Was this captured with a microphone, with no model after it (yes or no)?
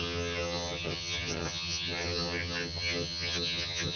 no